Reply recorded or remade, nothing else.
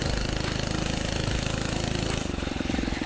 recorded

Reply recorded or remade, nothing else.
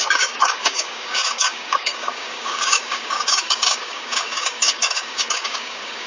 remade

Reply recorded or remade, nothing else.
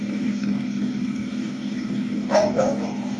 remade